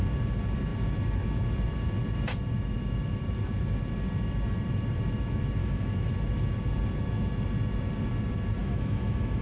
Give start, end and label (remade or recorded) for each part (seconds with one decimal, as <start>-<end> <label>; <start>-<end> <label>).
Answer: 0.0-5.6 recorded; 5.6-6.1 remade; 6.1-8.6 recorded; 8.6-9.4 remade